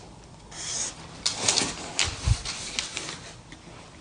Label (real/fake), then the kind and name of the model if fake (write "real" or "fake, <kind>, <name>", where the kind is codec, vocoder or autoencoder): real